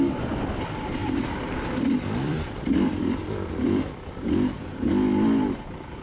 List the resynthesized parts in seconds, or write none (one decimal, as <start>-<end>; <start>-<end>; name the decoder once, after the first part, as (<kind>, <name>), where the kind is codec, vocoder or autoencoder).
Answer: 1.0-4.6 (vocoder, BigVGAN v2)